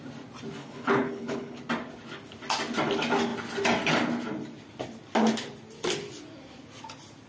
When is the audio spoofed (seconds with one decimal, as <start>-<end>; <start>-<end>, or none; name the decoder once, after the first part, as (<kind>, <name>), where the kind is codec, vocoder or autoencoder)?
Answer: 0.6-1.6 (codec, HILCodec)